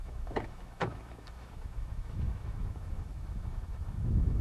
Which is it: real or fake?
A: fake